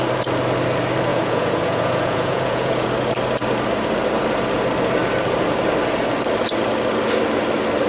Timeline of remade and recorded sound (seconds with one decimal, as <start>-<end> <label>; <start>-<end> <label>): 0.0-1.1 recorded; 1.1-2.9 remade; 2.9-7.9 recorded